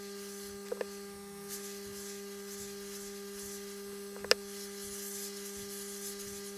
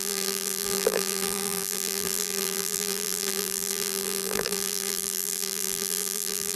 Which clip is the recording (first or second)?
first